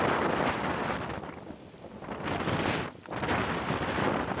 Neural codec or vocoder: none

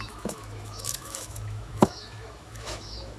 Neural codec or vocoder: autoencoder, DAC-VAE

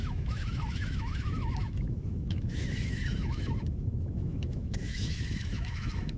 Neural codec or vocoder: autoencoder, DAC-VAE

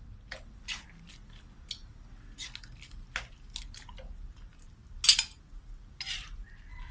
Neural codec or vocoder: none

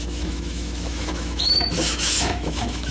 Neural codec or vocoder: autoencoder, DAC-VAE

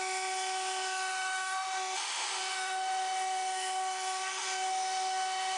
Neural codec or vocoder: autoencoder, DAC-VAE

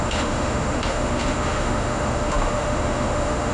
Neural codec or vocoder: autoencoder, DAC-VAE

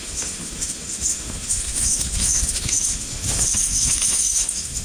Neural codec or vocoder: autoencoder, DAC-VAE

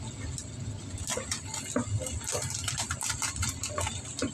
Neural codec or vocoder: none